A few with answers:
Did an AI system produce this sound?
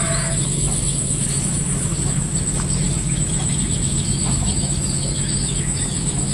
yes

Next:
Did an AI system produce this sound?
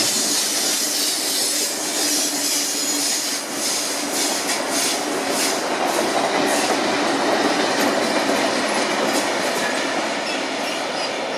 no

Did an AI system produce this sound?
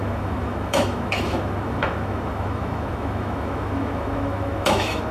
yes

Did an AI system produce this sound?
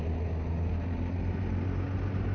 no